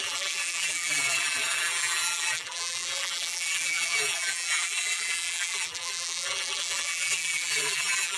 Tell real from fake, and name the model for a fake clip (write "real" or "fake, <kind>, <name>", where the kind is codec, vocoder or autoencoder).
fake, vocoder, BigVGAN v2